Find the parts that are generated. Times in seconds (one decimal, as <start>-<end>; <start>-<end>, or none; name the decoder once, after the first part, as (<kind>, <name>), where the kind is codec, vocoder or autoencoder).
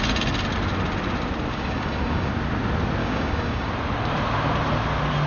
1.5-2.3 (codec, DAC); 3.0-3.7